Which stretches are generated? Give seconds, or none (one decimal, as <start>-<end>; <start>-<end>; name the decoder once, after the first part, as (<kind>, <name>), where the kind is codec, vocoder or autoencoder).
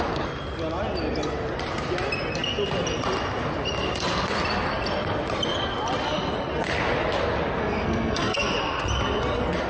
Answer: 7.6-8.4 (codec, SNAC)